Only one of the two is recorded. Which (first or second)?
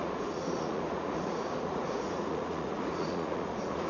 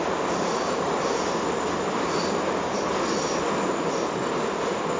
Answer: second